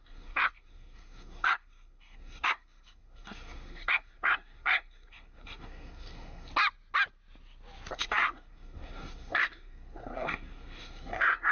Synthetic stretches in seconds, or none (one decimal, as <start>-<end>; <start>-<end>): 0.0-6.5; 7.9-11.5